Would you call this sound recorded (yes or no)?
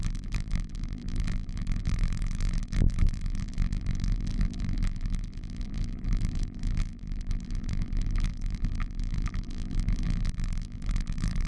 no